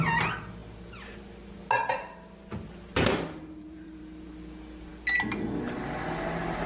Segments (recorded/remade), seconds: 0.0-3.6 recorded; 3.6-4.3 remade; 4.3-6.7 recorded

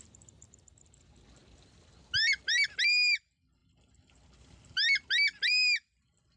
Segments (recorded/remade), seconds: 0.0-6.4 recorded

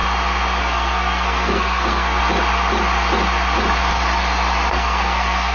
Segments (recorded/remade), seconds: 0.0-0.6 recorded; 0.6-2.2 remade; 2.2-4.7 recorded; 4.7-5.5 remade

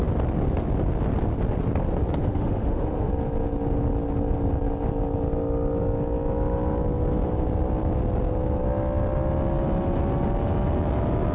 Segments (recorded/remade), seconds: 0.0-2.2 recorded; 2.2-3.1 remade; 3.1-11.3 recorded

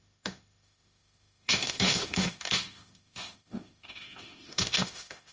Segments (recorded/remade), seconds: 0.0-5.3 remade

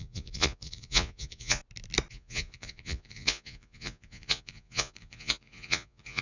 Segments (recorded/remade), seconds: 0.0-1.6 remade; 1.6-2.1 recorded; 2.1-6.2 remade

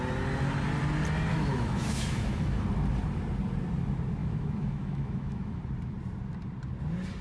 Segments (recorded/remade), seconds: 0.0-1.3 recorded; 1.3-2.6 remade; 2.6-4.2 recorded; 4.2-5.6 remade; 5.6-7.2 recorded

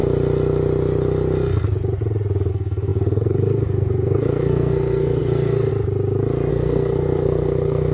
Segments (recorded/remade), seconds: 0.0-2.5 recorded; 2.5-5.7 remade; 5.7-6.5 recorded; 6.5-7.9 remade